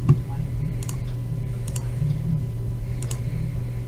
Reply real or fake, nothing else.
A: fake